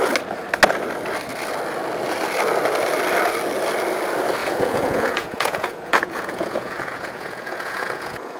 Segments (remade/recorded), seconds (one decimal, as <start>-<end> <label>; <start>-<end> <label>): 0.0-4.4 recorded; 4.4-8.4 remade